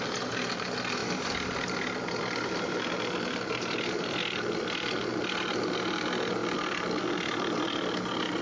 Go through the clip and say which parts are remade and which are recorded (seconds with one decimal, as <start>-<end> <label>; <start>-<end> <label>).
0.0-8.4 recorded